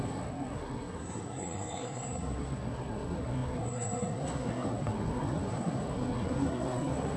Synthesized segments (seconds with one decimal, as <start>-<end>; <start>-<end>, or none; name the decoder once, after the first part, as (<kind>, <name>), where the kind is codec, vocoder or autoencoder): 0.0-7.2 (codec, SNAC)